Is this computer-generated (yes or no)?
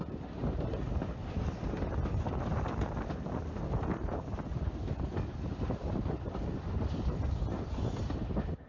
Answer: no